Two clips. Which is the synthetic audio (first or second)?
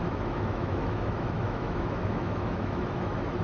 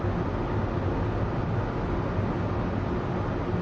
first